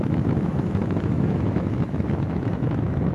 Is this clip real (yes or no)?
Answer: no